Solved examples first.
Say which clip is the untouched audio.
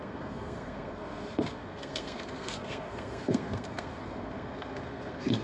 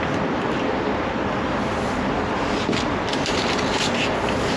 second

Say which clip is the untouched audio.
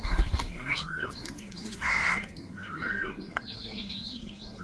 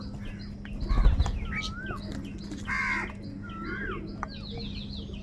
second